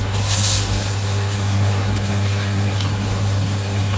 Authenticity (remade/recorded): remade